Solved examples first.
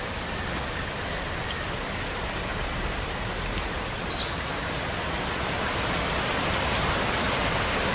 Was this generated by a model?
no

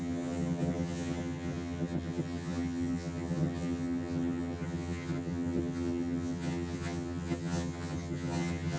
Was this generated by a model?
yes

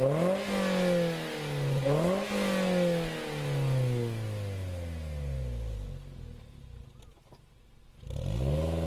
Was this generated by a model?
no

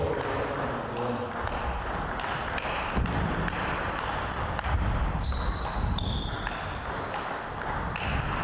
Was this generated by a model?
no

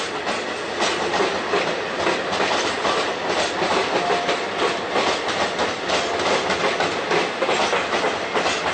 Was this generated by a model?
no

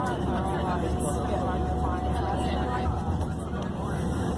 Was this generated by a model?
no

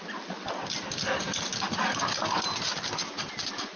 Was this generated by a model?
no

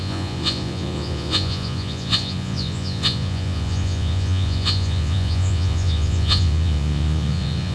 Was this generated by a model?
yes